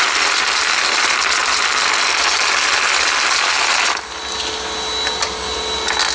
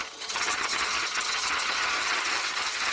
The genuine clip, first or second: first